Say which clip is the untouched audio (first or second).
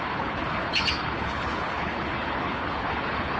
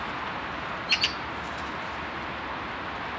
second